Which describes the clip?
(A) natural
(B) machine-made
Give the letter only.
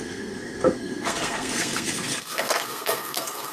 B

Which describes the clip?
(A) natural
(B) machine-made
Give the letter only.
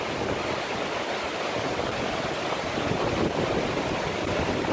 A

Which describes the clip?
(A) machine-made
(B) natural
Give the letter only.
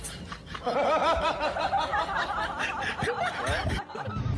B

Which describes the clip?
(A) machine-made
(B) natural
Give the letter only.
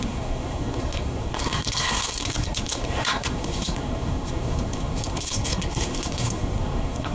A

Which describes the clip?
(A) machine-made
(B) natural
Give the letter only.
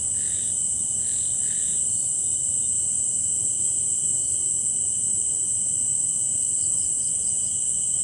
B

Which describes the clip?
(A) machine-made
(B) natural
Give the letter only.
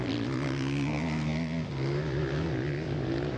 B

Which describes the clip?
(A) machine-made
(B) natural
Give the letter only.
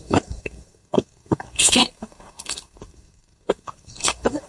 A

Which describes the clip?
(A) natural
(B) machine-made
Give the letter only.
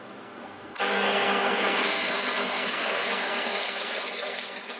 B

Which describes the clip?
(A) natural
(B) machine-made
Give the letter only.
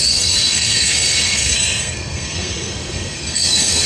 B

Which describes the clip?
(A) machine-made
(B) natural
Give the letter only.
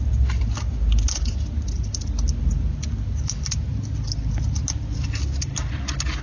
B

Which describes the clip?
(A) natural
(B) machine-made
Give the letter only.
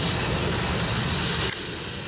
A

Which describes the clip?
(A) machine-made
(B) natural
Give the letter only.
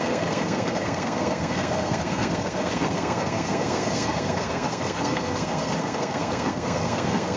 A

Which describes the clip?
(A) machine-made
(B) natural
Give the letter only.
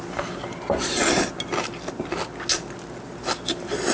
B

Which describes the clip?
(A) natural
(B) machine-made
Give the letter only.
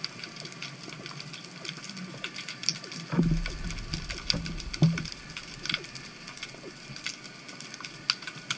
A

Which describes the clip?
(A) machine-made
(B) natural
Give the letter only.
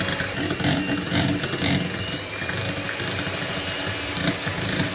B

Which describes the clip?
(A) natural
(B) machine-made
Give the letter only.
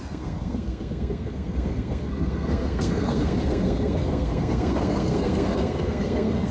B